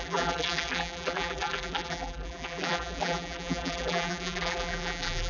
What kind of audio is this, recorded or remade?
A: remade